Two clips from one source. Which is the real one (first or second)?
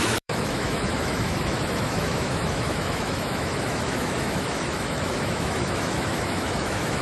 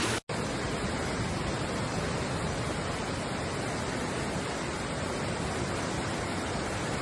second